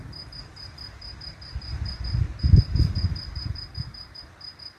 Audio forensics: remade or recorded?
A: remade